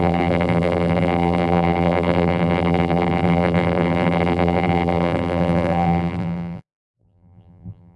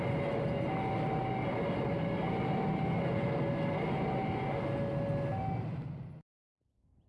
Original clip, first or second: second